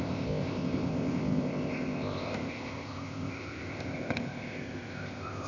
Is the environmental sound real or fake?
fake